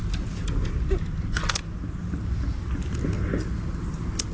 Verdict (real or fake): real